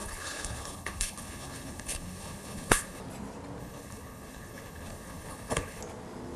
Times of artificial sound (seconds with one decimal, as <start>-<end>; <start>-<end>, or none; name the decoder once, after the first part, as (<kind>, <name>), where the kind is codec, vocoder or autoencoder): 0.0-3.0 (codec, HILCodec); 3.6-5.8